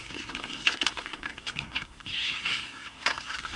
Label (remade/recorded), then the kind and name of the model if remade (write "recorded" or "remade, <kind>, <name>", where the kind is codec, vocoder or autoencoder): remade, codec, SNAC